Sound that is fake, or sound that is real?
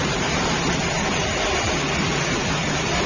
real